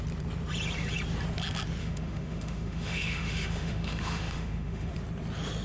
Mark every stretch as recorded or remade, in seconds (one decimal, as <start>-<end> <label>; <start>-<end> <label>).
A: 0.0-1.8 recorded; 1.8-4.9 remade; 4.9-5.6 recorded